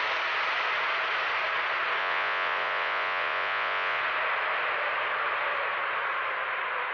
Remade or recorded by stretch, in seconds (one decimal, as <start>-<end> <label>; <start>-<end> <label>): 0.0-2.0 recorded; 2.0-4.0 remade; 4.0-6.9 recorded